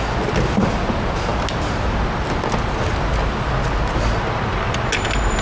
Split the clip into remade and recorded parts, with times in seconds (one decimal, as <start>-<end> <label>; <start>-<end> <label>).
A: 0.0-5.4 recorded